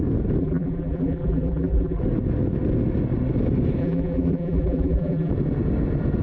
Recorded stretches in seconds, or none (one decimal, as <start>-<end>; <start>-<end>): 0.0-0.4; 2.0-3.8; 5.3-6.2